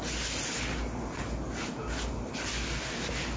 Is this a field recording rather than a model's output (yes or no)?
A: yes